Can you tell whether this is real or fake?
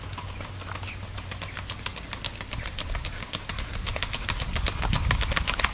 real